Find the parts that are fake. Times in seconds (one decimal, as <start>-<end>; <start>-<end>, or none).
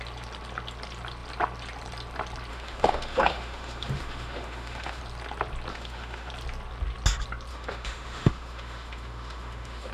2.5-5.0; 5.7-6.3; 7.5-9.9